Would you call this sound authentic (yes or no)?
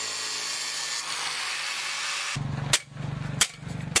yes